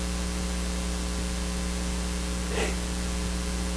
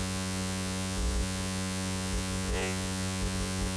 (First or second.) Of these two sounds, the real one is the first